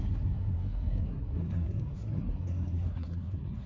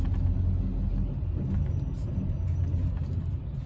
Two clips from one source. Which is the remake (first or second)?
first